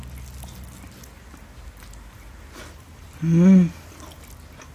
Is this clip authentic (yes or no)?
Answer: yes